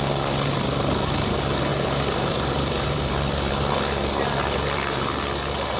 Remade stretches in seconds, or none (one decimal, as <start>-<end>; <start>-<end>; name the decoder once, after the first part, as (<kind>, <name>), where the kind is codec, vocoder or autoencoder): 1.7-5.2 (vocoder, BigVGAN v2)